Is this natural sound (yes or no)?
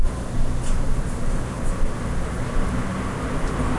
yes